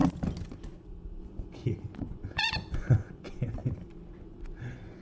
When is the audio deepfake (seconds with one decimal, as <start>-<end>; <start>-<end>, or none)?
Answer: 1.2-3.6; 4.1-5.0